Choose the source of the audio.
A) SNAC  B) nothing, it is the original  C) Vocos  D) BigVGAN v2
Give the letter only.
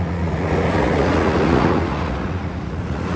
C